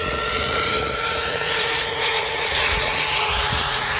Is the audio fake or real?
fake